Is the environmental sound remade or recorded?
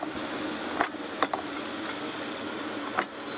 recorded